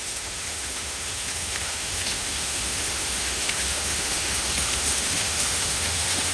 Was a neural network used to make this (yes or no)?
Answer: yes